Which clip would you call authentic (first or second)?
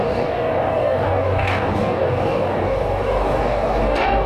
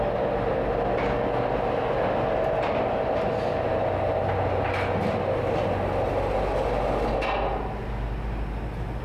second